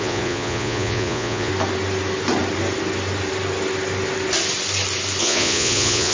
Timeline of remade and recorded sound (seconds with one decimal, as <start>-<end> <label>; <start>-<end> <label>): 0.0-1.5 remade; 1.5-5.2 recorded; 5.2-6.1 remade